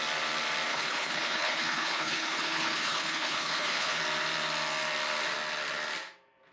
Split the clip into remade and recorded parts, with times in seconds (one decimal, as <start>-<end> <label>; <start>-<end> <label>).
0.0-0.7 recorded; 0.7-4.0 remade; 4.0-6.5 recorded